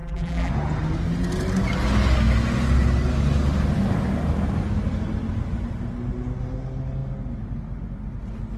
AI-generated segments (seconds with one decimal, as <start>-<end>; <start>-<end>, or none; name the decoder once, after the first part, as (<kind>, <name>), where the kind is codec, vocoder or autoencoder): 0.0-0.5 (vocoder, BigVGAN v2)